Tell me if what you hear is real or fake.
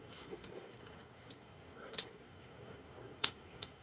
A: fake